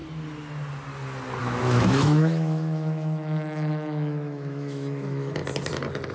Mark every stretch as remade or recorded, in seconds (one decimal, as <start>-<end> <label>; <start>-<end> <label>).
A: 0.0-1.4 recorded; 1.4-5.4 remade; 5.4-6.1 recorded

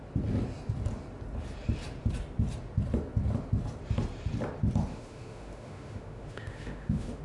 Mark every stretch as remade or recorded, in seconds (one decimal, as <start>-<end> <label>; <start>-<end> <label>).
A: 0.0-4.9 recorded; 4.9-7.2 remade

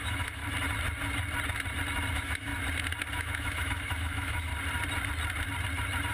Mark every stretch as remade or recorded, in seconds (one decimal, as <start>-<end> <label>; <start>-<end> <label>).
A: 0.0-0.4 remade; 0.4-2.1 recorded; 2.1-2.5 remade; 2.5-3.1 recorded; 3.1-4.5 remade; 4.5-6.1 recorded

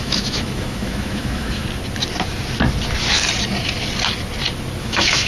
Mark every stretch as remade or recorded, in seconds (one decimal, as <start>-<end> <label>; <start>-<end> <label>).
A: 0.0-1.6 remade; 1.6-4.8 recorded; 4.8-5.3 remade

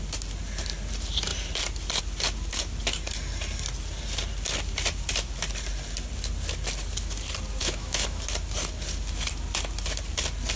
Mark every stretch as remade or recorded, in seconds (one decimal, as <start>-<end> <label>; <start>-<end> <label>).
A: 0.0-7.6 recorded; 7.6-8.2 remade; 8.2-10.6 recorded

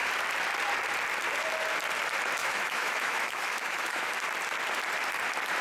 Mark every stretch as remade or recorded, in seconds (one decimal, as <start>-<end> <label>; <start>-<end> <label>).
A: 0.0-2.4 recorded; 2.4-4.1 remade; 4.1-5.6 recorded